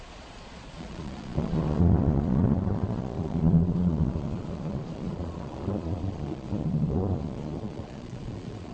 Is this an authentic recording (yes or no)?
no